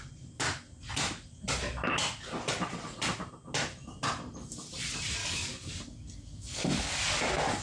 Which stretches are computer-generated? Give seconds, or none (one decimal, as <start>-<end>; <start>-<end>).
5.2-7.0